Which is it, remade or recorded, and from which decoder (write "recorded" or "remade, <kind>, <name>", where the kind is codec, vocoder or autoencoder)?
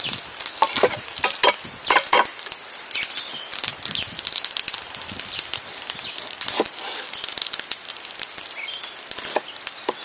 remade, vocoder, BigVGAN v2